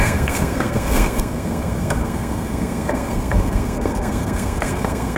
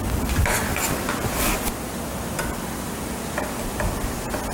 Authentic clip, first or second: second